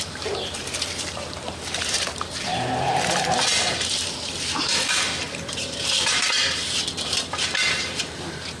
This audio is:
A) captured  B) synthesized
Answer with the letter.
B